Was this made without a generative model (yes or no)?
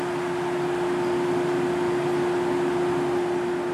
yes